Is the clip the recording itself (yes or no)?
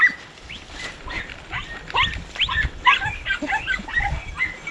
no